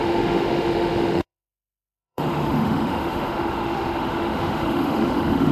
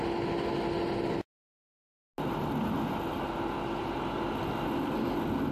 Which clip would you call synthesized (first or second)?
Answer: first